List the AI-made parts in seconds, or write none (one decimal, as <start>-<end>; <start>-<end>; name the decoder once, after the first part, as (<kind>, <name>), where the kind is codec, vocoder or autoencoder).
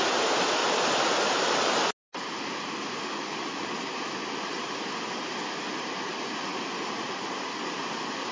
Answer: none